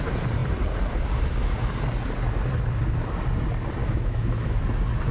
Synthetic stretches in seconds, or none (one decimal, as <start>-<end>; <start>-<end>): 3.8-4.6